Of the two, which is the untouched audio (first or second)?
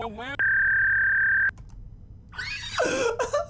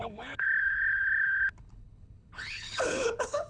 first